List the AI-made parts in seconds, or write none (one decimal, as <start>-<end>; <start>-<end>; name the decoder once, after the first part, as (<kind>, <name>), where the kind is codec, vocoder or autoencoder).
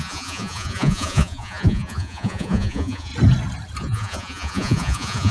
0.0-3.1 (vocoder, Vocos); 3.8-5.3